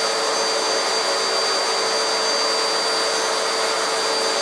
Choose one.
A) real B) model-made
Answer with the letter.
A